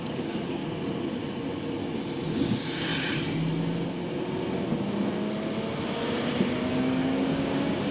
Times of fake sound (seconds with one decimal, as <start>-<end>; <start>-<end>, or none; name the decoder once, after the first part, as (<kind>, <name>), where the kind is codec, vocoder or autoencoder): 0.0-0.6 (codec, DAC); 2.3-2.9; 6.7-7.9